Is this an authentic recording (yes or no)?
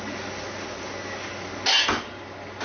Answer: yes